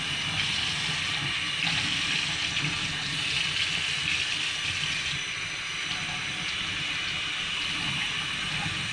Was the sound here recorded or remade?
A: recorded